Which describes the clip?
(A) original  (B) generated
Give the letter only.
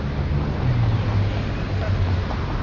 A